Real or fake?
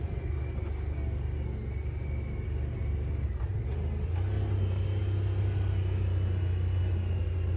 real